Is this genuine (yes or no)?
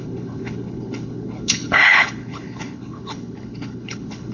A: no